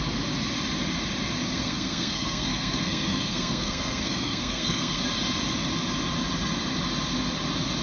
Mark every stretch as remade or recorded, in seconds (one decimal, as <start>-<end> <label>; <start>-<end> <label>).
0.0-1.5 recorded; 1.5-5.0 remade; 5.0-7.8 recorded